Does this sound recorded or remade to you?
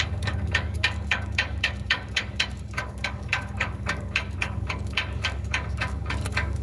remade